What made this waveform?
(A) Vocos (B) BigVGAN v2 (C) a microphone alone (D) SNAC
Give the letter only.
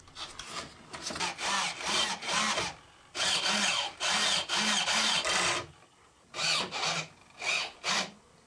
C